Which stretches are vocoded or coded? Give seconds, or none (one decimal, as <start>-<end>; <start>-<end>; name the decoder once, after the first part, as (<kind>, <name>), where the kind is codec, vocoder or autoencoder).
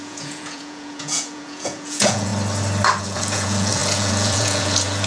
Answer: 0.0-2.3 (vocoder, Vocos); 3.0-5.1